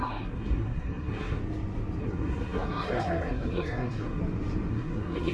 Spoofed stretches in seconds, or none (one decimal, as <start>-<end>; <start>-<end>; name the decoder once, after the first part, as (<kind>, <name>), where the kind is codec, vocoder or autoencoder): 0.0-1.4 (codec, SNAC); 2.0-4.2; 4.7-5.3